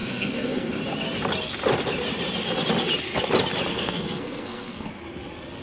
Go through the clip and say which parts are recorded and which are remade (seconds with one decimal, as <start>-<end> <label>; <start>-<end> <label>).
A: 0.0-0.7 remade; 0.7-3.7 recorded; 3.7-4.9 remade; 4.9-5.6 recorded